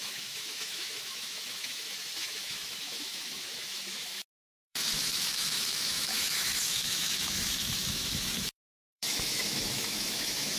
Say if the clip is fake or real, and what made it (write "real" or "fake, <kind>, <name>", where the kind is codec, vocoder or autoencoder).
fake, autoencoder, DAC-VAE